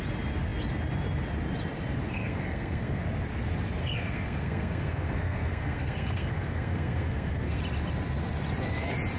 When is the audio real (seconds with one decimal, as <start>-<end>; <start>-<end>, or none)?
0.0-2.1; 3.0-3.8; 7.6-9.2